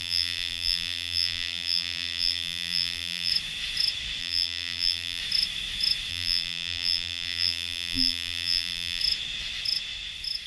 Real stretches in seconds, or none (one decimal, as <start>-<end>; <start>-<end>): 3.3-4.2; 5.2-6.1; 9.0-10.5